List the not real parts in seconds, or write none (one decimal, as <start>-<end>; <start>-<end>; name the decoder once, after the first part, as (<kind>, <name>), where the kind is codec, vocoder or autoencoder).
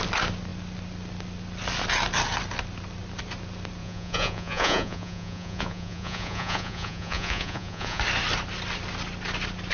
3.8-8.0 (vocoder, Vocos)